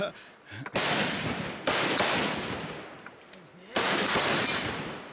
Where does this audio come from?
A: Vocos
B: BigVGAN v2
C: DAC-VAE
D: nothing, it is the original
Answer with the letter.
D